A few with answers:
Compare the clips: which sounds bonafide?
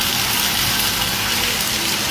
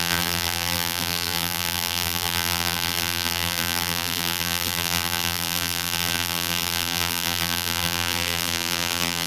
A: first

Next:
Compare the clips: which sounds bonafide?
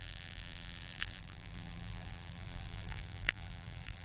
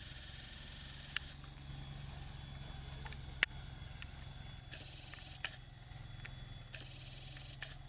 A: second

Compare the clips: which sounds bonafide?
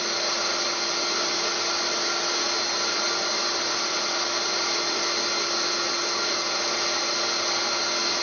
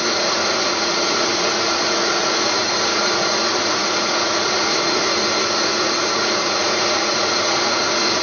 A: first